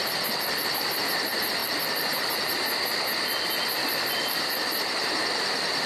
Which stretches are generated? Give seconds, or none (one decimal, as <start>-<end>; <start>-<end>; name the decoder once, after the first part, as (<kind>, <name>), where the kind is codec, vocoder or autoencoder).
none